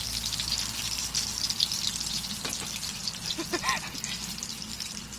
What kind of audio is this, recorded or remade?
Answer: recorded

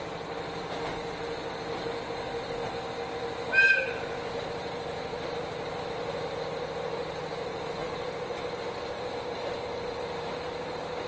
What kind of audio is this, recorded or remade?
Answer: recorded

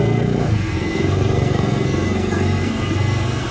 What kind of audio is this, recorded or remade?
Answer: remade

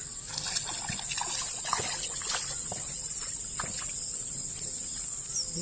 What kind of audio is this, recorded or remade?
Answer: recorded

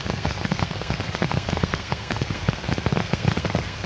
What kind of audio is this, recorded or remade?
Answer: remade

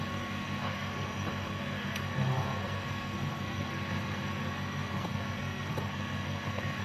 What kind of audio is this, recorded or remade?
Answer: remade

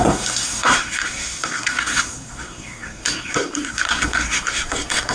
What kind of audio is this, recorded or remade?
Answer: remade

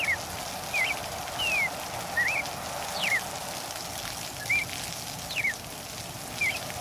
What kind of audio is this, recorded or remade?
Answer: recorded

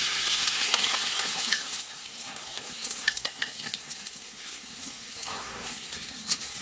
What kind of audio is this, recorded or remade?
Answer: remade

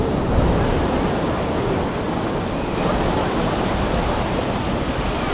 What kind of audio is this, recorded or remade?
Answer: recorded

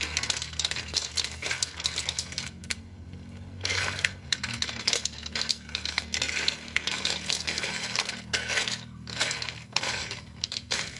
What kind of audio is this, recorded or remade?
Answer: remade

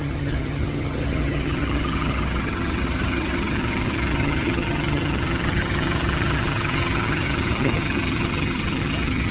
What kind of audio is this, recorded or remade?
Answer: remade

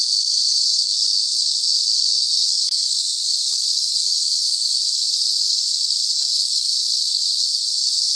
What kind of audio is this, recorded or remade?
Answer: remade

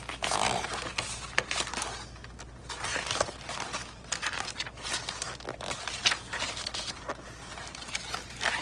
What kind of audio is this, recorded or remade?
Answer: recorded